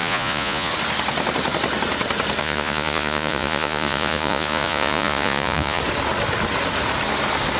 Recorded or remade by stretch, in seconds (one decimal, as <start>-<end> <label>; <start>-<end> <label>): 0.0-0.7 remade; 0.7-2.4 recorded; 2.4-5.8 remade; 5.8-7.6 recorded